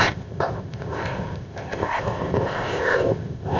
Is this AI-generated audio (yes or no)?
yes